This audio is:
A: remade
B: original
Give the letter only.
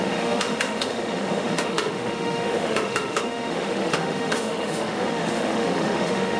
A